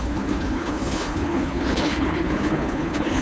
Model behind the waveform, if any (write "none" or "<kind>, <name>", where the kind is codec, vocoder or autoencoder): codec, HILCodec